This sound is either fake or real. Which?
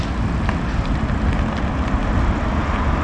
real